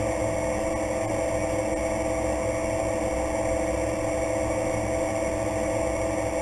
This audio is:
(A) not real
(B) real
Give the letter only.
B